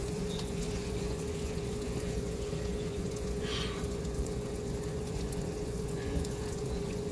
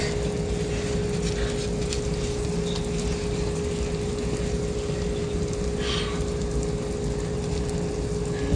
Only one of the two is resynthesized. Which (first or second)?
first